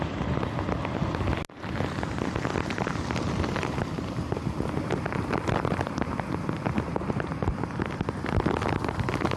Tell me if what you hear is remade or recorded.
recorded